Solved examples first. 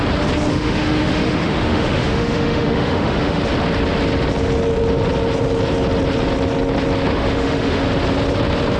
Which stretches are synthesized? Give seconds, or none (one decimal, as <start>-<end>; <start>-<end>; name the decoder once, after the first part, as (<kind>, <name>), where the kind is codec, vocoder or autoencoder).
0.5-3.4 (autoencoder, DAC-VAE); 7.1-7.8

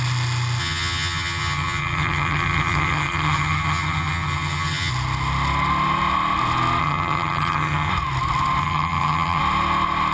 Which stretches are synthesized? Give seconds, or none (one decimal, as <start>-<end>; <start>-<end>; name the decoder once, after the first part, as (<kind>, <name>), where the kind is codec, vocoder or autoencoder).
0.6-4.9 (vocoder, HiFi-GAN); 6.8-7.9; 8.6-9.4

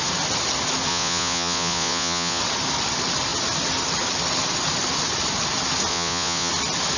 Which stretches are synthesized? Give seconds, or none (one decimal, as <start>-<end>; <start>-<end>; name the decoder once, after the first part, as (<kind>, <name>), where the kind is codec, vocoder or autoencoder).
0.9-2.4 (vocoder, Vocos); 5.9-6.5

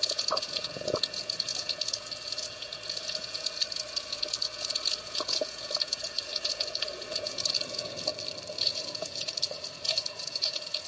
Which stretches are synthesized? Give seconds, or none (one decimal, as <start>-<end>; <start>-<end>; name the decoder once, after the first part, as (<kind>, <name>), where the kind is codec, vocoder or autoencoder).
0.0-8.1 (vocoder, Vocos); 8.6-10.9